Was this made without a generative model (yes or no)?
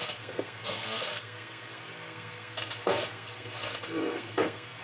no